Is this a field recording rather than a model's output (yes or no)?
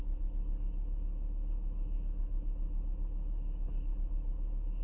yes